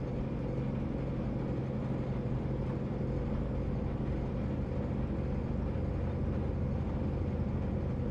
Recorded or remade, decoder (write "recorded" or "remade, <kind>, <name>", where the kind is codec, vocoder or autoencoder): recorded